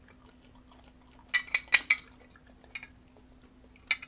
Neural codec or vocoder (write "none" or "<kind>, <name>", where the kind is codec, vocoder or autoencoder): none